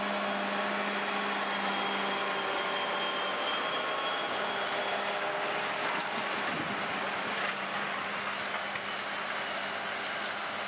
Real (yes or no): yes